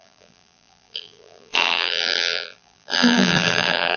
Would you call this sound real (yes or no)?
no